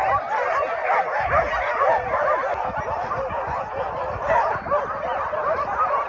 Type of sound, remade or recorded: recorded